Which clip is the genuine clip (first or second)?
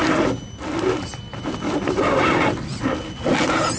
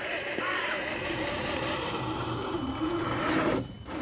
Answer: first